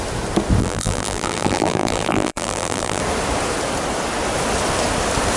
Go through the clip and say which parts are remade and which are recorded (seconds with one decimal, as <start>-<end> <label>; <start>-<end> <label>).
0.0-0.6 recorded; 0.6-3.0 remade; 3.0-5.4 recorded